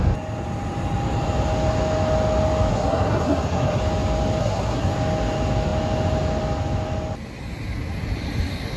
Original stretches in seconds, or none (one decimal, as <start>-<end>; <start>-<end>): 0.0-2.7; 3.8-4.4; 4.9-8.8